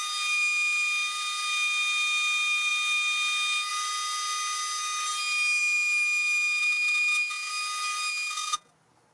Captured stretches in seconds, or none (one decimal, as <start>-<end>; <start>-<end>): 0.0-6.6; 7.5-8.1; 8.7-9.1